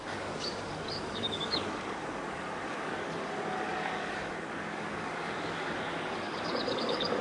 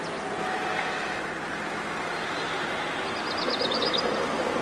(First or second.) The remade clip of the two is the first